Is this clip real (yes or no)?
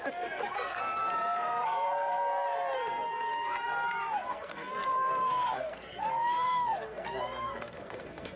no